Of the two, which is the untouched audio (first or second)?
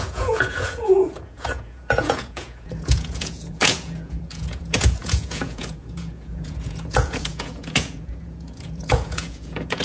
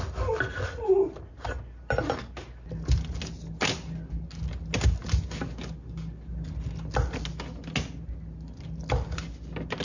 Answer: second